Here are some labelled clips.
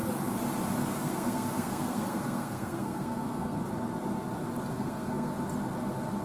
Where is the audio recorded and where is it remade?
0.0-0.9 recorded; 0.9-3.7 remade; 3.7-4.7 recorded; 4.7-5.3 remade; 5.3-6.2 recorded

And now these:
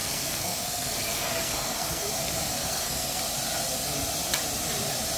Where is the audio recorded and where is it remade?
0.0-2.1 remade; 2.1-2.6 recorded; 2.6-3.2 remade; 3.2-5.2 recorded

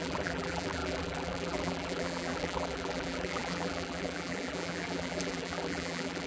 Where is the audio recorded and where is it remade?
0.0-6.3 remade